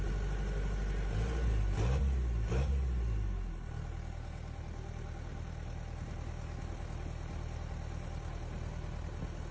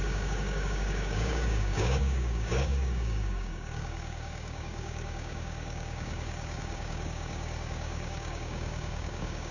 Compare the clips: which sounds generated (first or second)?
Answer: second